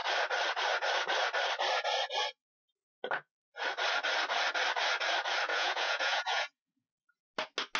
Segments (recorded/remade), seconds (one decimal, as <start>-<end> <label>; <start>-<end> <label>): 0.0-5.5 recorded; 5.5-6.9 remade; 6.9-7.8 recorded